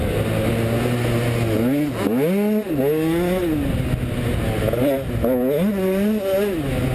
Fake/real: real